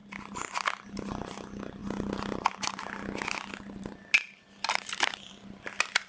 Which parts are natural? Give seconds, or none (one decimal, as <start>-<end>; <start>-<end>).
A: 0.0-6.1